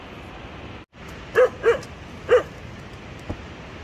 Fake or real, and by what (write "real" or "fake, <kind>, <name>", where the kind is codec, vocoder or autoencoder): real